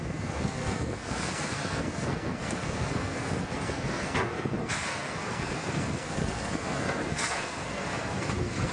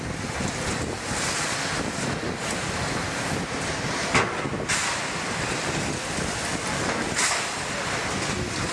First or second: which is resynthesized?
first